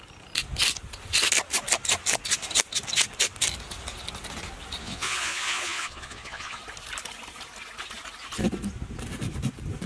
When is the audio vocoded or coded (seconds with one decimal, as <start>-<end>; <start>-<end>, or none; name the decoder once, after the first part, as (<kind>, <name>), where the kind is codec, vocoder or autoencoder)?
4.8-6.6 (vocoder, Vocos)